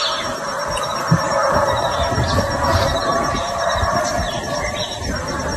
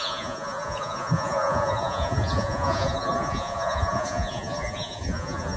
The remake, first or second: second